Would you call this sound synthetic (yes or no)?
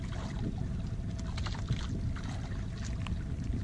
no